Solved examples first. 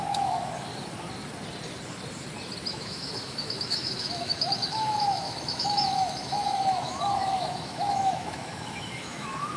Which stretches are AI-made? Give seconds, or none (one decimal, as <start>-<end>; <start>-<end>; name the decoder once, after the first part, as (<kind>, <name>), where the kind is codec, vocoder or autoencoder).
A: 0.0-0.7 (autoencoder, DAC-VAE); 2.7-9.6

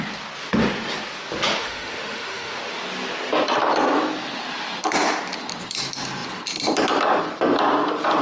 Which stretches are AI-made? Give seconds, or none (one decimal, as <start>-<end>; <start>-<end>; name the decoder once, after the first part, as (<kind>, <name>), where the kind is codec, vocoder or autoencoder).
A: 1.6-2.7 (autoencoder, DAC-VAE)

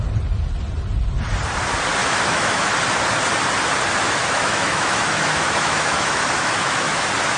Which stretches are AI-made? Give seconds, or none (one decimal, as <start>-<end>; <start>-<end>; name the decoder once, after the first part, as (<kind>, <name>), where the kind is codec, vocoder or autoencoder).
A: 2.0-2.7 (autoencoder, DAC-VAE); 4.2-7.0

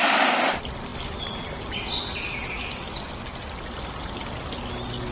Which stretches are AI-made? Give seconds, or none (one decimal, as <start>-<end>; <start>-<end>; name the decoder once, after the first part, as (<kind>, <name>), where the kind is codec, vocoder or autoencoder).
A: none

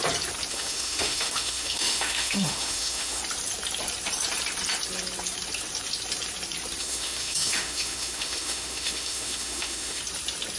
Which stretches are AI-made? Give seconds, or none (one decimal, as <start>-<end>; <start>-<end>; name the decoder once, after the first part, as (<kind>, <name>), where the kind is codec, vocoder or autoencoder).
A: 0.5-3.2 (autoencoder, DAC-VAE); 6.8-10.0